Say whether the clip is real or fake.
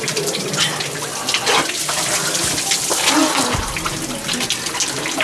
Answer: real